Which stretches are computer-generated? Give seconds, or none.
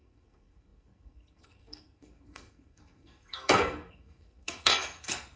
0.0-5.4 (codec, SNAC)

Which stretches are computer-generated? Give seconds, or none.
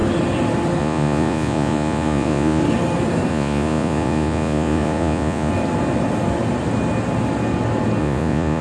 0.8-2.6 (vocoder, Vocos); 3.3-5.5; 8.0-8.6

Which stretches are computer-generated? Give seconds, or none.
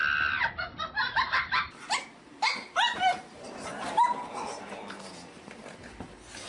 1.0-4.7 (vocoder, BigVGAN v2)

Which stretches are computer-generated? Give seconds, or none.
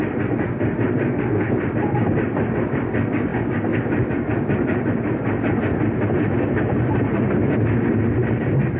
1.0-1.5 (codec, SNAC)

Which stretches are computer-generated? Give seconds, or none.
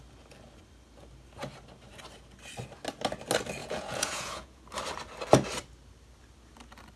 3.6-4.6 (vocoder, Vocos)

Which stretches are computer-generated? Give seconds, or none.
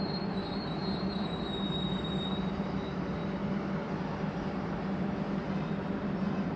0.0-3.2 (vocoder, BigVGAN v2); 4.4-6.6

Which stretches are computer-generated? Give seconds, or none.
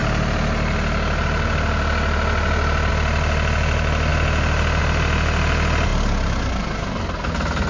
none